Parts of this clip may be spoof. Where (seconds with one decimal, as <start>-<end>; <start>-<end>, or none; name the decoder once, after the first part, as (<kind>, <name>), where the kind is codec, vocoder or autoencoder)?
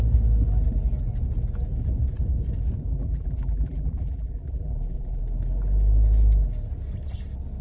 2.9-5.2 (vocoder, BigVGAN v2)